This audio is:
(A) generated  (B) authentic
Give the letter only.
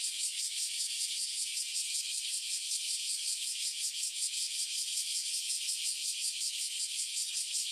A